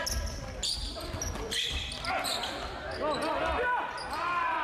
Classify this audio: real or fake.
real